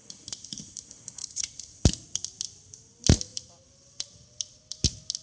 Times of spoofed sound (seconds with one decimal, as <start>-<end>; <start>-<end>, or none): 1.2-1.8